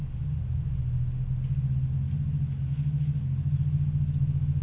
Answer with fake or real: real